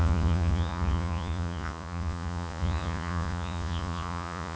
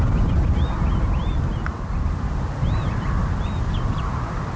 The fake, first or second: first